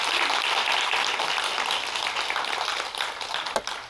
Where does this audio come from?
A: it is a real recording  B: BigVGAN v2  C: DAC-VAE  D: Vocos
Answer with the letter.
A